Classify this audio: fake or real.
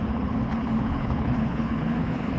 fake